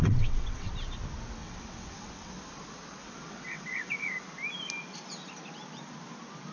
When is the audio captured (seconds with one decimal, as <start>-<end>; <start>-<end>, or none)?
0.7-1.4; 2.3-3.0; 4.1-6.5